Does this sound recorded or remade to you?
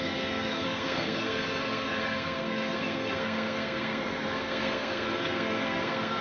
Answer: remade